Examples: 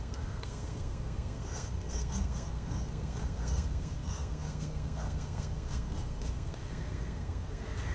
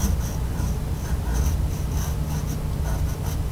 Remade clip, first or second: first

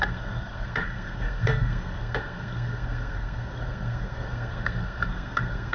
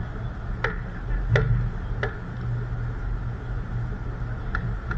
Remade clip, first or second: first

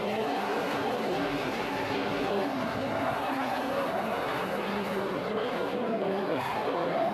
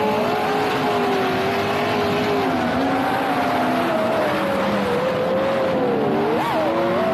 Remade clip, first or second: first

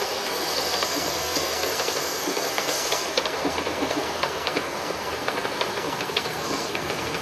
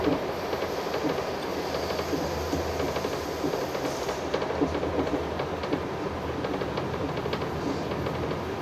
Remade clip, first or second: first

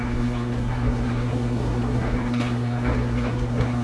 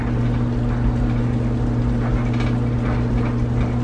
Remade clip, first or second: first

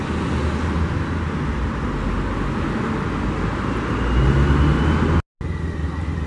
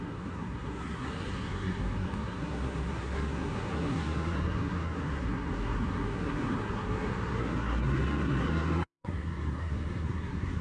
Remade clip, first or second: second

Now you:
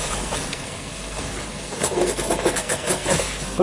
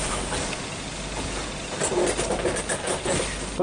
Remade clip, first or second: first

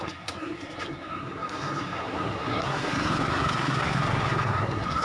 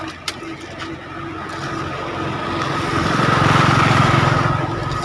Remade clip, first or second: first